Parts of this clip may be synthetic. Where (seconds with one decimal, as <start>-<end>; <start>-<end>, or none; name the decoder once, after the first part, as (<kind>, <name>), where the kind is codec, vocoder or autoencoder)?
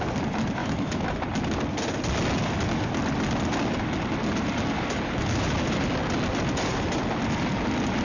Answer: 0.6-1.2 (autoencoder, DAC-VAE)